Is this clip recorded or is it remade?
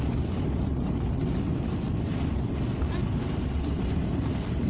recorded